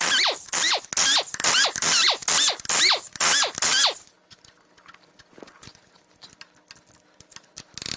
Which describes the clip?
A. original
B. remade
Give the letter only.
A